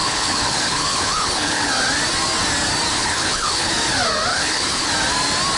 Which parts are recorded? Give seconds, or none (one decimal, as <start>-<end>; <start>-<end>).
1.7-2.9; 3.7-4.3; 4.9-5.6